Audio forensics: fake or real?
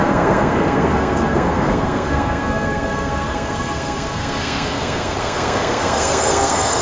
fake